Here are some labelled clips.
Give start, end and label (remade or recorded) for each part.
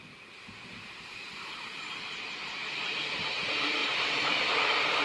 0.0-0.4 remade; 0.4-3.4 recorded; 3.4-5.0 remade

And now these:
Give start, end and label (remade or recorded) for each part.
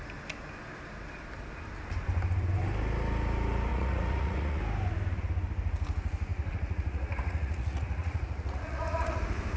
0.0-3.7 recorded; 3.7-4.6 remade; 4.6-6.3 recorded; 6.3-9.2 remade; 9.2-9.6 recorded